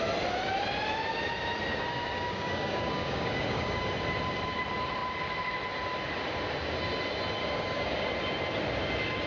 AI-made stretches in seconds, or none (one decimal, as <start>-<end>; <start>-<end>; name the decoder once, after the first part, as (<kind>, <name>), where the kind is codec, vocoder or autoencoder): 1.7-3.9 (codec, DAC); 7.4-8.1